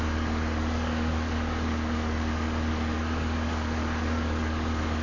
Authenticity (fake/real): fake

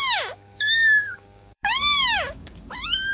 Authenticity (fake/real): fake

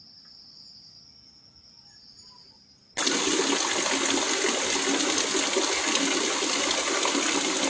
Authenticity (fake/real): real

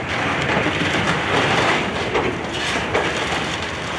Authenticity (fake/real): real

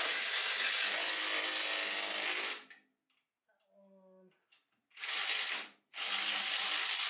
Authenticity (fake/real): real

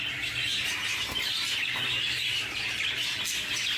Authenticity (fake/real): real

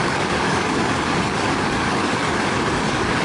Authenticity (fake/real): fake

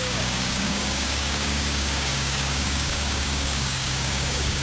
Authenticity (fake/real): fake